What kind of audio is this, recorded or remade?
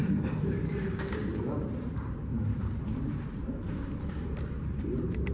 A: remade